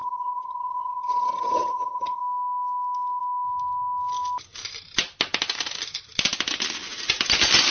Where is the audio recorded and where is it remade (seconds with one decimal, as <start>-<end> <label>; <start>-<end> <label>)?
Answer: 0.0-2.2 remade; 2.2-7.7 recorded